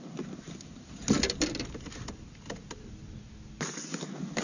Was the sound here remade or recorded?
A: recorded